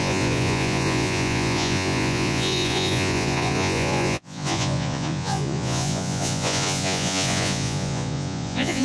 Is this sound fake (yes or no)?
yes